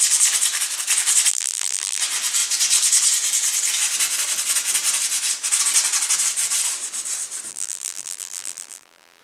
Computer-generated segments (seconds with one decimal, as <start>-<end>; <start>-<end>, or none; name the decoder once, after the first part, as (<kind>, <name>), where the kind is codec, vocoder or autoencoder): 1.3-2.0 (vocoder, BigVGAN v2); 7.5-9.2